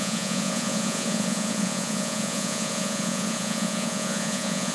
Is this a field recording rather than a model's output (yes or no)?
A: no